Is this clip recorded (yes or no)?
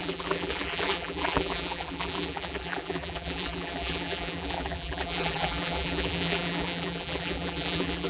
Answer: no